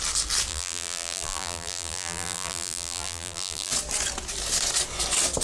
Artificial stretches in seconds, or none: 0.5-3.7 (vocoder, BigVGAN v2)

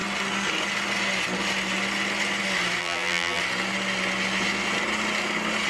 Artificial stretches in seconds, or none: 2.8-3.4 (vocoder, BigVGAN v2)